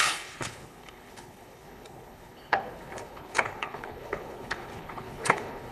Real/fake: fake